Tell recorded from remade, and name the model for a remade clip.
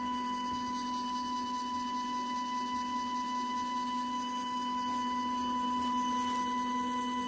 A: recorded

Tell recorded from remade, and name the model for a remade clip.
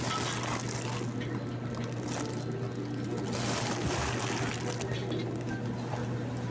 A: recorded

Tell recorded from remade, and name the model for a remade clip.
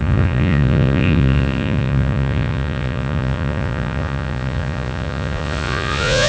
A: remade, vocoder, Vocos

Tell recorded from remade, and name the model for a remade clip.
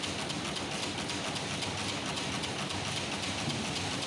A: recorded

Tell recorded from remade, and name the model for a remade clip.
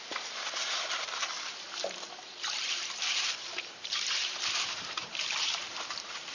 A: remade, vocoder, BigVGAN v2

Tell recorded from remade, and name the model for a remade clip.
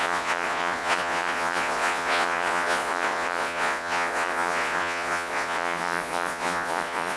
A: remade, vocoder, Vocos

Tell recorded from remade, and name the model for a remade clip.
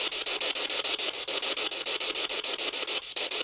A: recorded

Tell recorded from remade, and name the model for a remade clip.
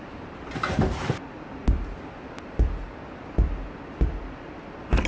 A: recorded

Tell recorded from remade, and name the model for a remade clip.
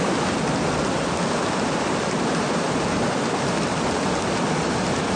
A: recorded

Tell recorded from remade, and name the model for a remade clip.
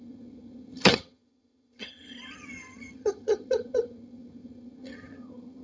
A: remade, vocoder, HiFi-GAN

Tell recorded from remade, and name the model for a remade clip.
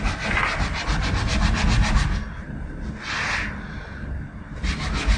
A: recorded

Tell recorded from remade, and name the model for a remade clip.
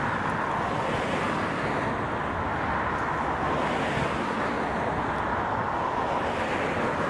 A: recorded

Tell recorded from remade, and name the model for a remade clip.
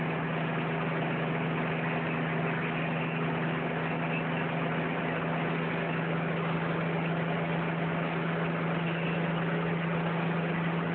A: recorded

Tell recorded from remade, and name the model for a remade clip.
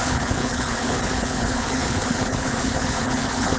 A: remade, codec, HILCodec